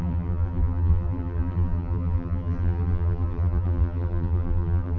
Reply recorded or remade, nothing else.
remade